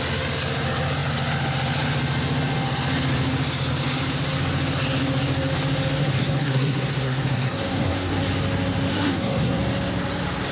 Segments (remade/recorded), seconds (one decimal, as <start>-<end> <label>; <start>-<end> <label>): 0.0-6.0 recorded; 6.0-8.2 remade; 8.2-8.9 recorded; 8.9-9.6 remade; 9.6-10.5 recorded